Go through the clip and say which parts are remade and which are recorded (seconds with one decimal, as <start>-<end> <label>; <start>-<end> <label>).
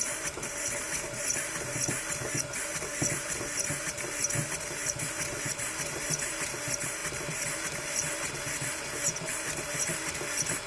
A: 0.0-10.7 recorded